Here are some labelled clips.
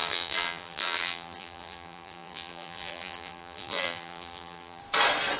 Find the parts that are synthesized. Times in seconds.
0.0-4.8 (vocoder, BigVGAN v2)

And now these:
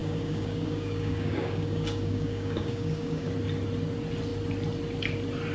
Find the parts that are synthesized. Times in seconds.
0.0-3.3 (codec, DAC)